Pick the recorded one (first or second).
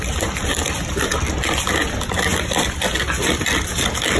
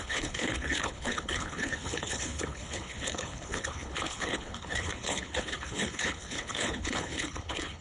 first